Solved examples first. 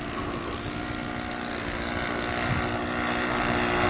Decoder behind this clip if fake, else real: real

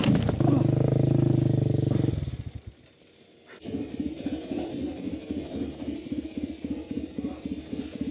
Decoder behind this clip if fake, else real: real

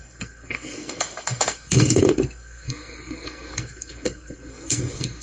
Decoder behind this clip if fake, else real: fake, codec, SNAC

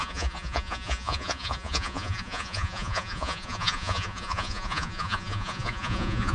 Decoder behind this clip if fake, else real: fake, vocoder, Vocos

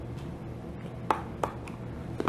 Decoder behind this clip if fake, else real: real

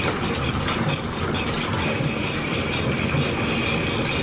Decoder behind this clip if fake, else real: real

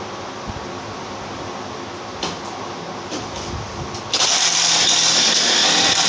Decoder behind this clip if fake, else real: real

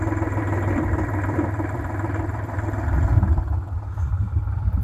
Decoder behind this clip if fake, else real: fake, vocoder, BigVGAN v2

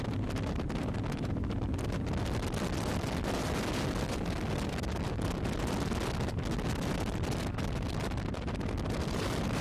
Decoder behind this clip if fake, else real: real